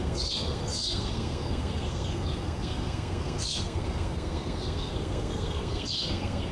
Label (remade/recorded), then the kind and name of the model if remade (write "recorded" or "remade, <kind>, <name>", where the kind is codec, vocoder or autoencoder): remade, codec, SNAC